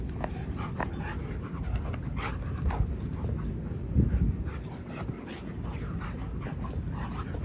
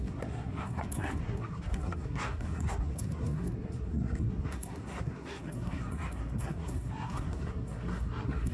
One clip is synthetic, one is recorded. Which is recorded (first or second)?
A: first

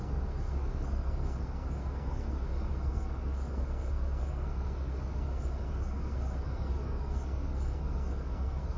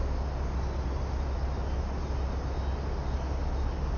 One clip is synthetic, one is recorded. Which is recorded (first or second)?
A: second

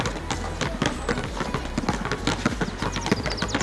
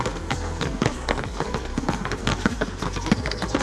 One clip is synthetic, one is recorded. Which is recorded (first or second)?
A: first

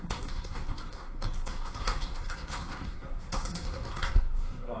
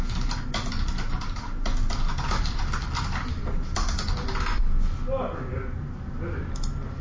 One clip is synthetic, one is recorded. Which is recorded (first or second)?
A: second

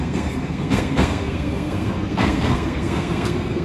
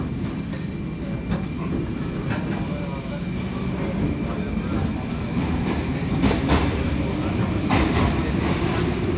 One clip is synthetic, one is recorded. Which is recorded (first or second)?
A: second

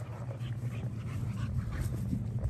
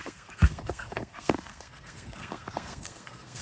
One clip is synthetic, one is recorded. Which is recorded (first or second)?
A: first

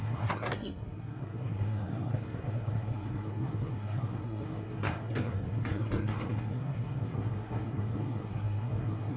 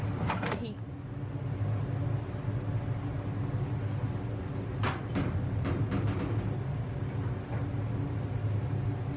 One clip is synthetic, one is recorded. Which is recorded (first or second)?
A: second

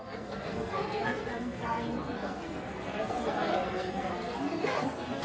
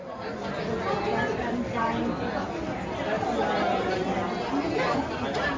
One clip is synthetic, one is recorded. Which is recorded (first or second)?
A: second